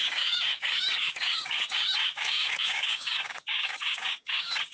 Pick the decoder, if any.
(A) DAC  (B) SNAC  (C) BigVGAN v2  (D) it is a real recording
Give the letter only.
A